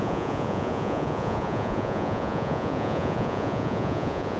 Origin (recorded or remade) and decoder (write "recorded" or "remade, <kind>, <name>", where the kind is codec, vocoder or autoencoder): remade, vocoder, Vocos